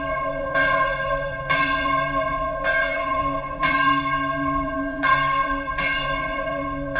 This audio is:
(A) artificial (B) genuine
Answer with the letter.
A